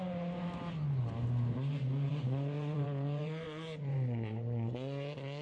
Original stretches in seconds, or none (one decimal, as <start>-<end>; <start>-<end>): 0.0-2.1